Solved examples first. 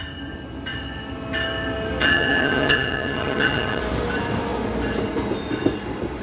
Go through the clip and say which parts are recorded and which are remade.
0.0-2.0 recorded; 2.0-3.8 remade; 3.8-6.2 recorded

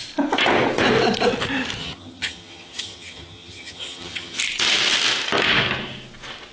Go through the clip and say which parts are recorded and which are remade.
0.0-1.8 recorded; 1.8-4.4 remade; 4.4-6.5 recorded

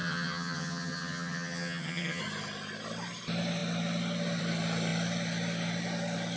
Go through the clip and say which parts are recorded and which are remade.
0.0-2.2 remade; 2.2-6.4 recorded

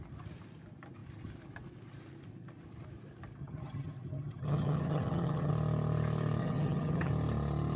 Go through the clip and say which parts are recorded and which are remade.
0.0-3.4 recorded; 3.4-5.5 remade; 5.5-6.4 recorded; 6.4-7.1 remade; 7.1-7.8 recorded

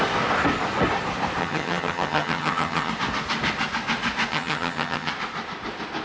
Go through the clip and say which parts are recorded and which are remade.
0.0-1.4 recorded; 1.4-2.9 remade; 2.9-4.3 recorded; 4.3-5.1 remade; 5.1-6.0 recorded

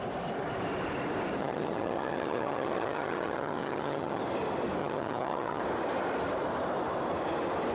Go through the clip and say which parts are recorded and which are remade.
0.0-1.4 recorded; 1.4-4.2 remade; 4.2-4.8 recorded; 4.8-5.6 remade; 5.6-7.7 recorded